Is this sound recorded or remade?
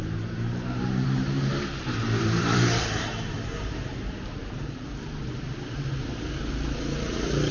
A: remade